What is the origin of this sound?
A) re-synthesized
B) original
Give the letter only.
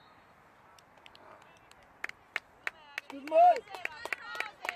B